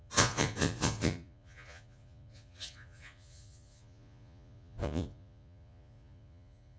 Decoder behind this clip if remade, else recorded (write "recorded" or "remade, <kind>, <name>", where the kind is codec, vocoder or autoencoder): remade, vocoder, Vocos